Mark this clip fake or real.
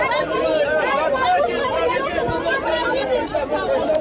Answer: fake